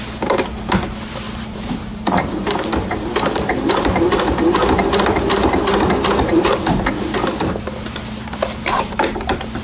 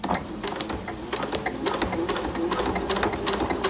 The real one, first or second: second